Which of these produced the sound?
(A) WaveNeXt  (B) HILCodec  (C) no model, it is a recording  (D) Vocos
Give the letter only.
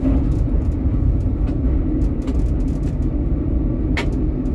C